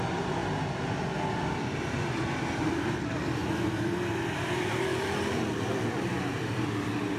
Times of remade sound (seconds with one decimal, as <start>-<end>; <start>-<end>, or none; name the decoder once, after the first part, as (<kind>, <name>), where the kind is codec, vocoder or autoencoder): 0.0-0.4 (vocoder, BigVGAN v2); 1.3-7.2